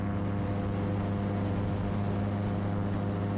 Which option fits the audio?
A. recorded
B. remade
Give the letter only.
A